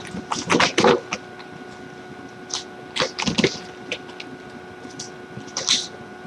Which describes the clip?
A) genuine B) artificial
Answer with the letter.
A